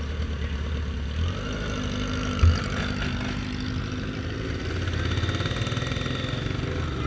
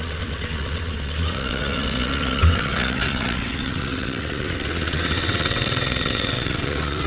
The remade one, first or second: second